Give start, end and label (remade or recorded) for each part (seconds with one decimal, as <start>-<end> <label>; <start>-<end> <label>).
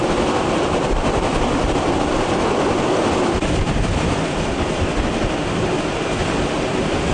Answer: 0.0-7.1 recorded